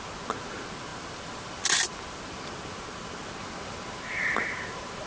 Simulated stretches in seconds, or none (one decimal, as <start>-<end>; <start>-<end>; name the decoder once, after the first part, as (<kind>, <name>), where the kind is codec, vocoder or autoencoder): none